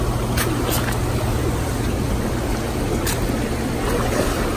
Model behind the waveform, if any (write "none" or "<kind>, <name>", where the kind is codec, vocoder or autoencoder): none